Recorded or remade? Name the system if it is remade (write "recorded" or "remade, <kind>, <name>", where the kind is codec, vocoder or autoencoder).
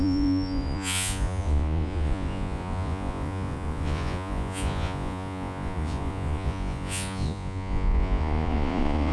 remade, vocoder, Vocos